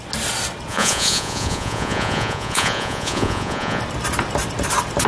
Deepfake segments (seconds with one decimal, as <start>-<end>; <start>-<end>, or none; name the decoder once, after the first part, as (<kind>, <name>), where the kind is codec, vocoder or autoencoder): 0.7-3.8 (vocoder, Vocos)